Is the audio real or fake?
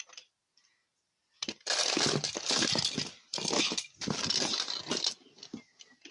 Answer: real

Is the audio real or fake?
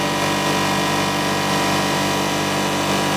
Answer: real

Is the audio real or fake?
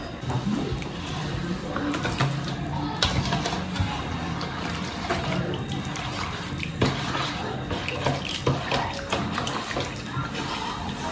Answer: real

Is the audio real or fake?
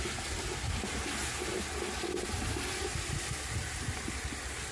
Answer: real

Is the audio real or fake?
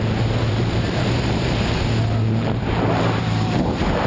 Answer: fake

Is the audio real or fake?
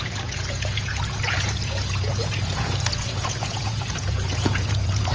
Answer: fake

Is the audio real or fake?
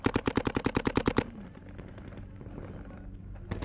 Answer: real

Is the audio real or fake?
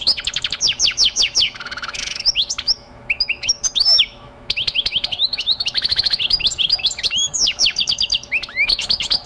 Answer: fake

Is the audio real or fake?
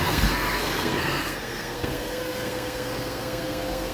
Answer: fake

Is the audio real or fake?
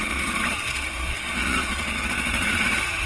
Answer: fake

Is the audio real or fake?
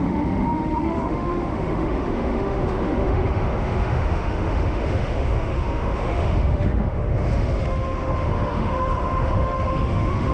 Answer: fake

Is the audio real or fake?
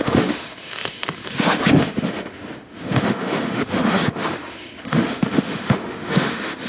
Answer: fake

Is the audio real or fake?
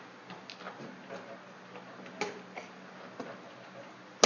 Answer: real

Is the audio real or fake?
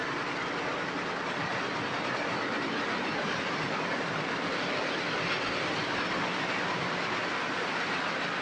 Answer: real